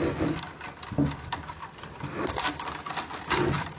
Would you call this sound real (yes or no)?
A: yes